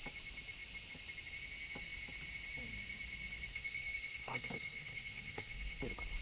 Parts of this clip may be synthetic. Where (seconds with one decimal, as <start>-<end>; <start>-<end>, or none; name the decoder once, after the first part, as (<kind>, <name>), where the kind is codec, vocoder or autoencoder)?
3.5-5.8 (codec, SNAC)